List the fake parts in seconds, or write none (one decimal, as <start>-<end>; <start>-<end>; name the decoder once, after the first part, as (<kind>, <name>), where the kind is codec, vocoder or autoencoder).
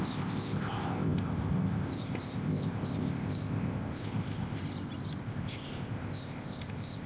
0.0-4.6 (codec, ZipCodec); 5.2-7.1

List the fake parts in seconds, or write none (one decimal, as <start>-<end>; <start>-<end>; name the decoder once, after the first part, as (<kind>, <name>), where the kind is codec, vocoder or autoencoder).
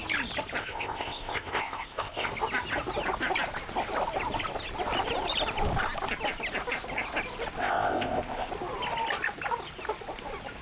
0.6-2.3 (codec, ZipCodec); 7.6-8.5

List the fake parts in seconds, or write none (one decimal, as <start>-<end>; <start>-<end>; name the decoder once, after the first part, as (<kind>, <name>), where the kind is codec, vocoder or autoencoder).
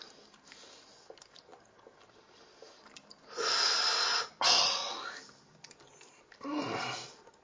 none